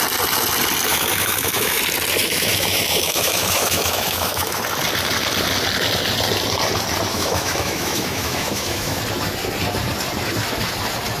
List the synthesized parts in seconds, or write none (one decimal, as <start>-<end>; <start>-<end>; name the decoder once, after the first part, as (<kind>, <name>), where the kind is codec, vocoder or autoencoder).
0.9-1.8 (autoencoder, DAC-VAE); 2.2-4.6; 7.1-9.0